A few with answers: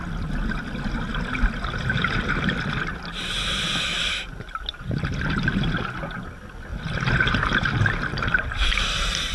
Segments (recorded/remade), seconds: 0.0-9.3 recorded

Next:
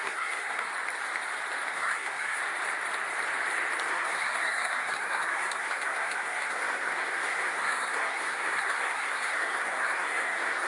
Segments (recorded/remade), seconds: 0.0-0.7 remade; 0.7-1.7 recorded; 1.7-2.4 remade; 2.4-3.9 recorded; 3.9-10.7 remade

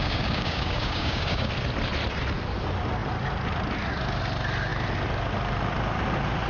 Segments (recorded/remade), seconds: 0.0-1.5 remade; 1.5-6.5 recorded

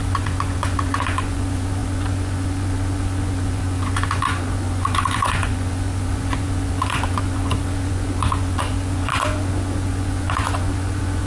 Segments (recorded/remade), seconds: 0.0-11.3 remade

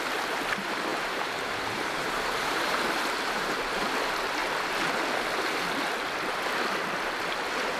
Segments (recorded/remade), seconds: 0.0-0.9 recorded; 0.9-3.8 remade; 3.8-7.8 recorded

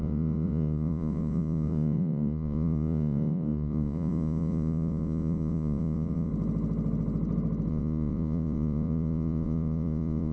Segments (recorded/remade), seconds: 0.0-6.3 remade; 6.3-7.7 recorded; 7.7-10.3 remade

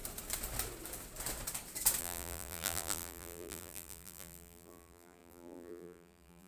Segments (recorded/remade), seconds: 0.0-2.0 recorded; 2.0-6.5 remade